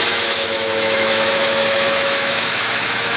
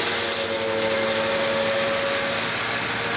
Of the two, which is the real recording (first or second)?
second